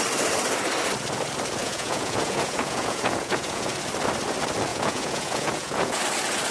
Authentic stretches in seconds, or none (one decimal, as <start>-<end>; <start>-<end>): 0.0-1.6; 3.7-4.7; 6.0-6.5